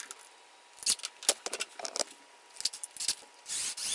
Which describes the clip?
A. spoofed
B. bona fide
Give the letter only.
B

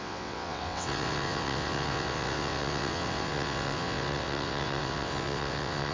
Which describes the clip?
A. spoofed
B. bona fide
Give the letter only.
A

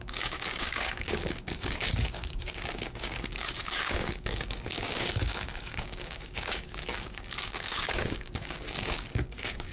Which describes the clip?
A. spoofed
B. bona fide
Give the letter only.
A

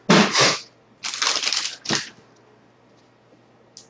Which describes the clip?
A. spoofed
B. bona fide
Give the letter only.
B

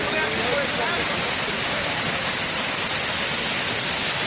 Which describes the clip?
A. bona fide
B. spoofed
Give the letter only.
A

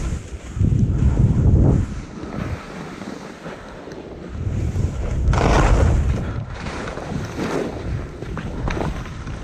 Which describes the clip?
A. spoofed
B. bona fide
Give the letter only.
B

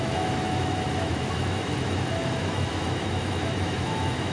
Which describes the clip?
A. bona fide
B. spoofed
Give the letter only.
B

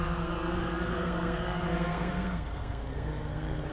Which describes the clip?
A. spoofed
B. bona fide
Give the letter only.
A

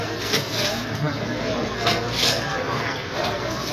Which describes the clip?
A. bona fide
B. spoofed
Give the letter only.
B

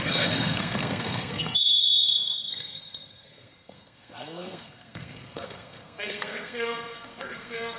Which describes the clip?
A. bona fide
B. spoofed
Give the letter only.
B